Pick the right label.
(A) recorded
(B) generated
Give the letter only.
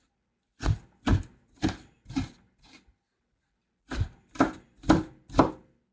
A